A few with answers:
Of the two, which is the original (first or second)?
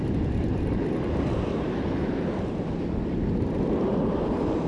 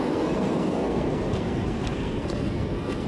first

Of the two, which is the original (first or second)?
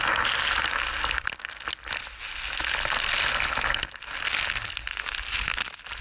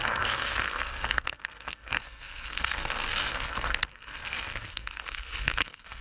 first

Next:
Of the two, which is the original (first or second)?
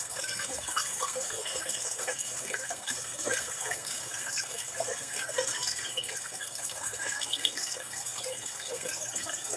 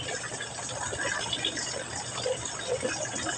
second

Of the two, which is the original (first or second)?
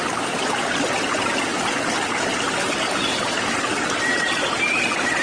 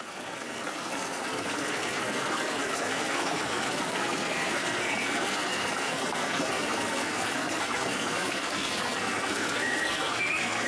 first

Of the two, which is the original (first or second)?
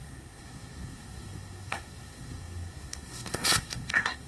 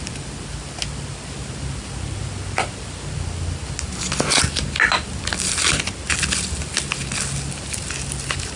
second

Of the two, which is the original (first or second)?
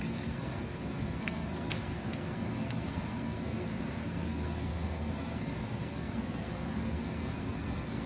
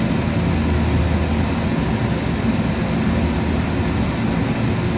second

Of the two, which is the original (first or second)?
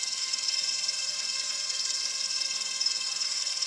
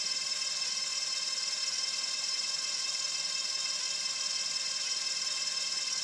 second